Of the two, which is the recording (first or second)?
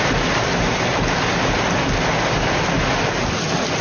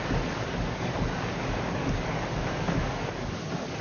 first